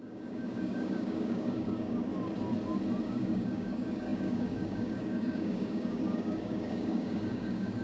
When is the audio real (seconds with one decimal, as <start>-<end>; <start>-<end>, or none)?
2.1-3.0